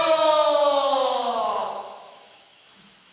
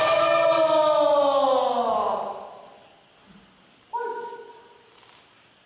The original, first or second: second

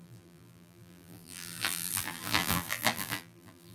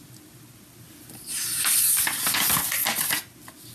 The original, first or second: second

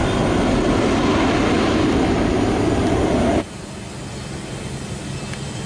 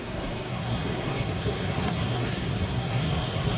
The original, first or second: first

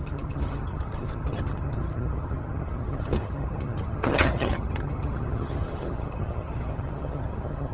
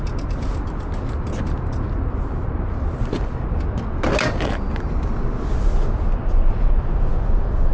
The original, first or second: second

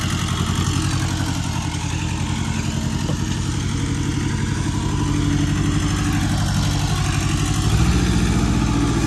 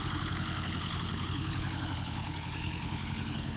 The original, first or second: first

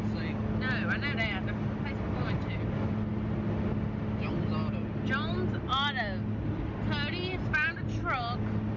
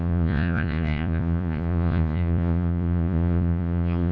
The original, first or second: first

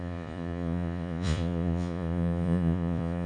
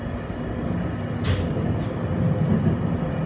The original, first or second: second